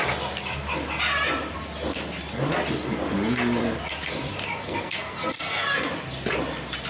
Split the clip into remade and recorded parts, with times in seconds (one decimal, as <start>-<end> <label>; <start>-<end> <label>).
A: 0.0-4.6 recorded; 4.6-5.9 remade; 5.9-6.9 recorded